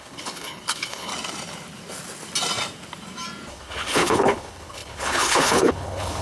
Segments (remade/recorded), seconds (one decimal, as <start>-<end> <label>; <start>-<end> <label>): 0.0-1.1 remade; 1.1-3.5 recorded; 3.5-6.2 remade